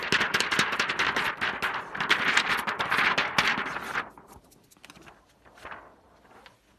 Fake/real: real